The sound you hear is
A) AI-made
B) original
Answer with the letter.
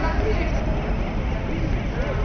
B